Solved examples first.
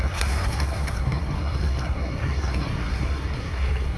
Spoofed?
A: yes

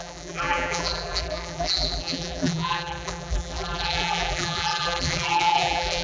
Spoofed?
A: yes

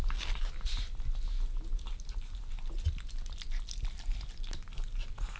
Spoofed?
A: no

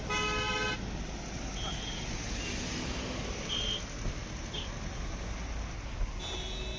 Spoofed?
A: no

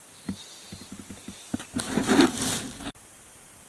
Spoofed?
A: no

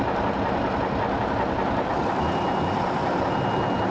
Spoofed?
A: no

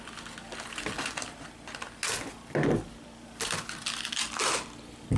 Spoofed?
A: no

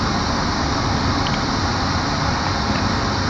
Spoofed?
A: no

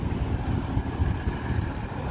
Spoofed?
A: no